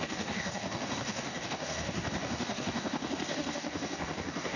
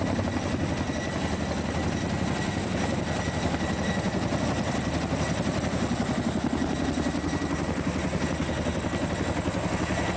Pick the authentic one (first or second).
second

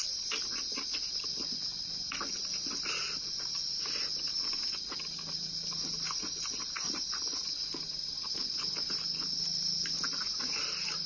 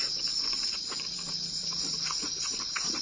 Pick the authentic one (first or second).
first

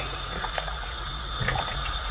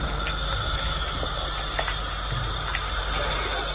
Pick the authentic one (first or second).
second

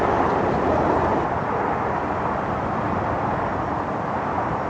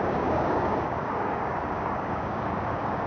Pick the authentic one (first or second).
first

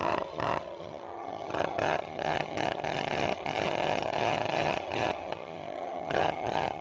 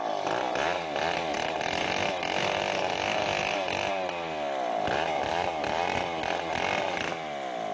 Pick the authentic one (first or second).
second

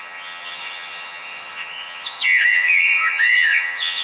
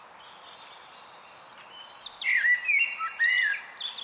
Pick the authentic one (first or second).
second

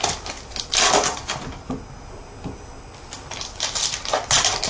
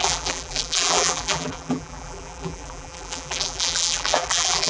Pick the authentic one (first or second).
first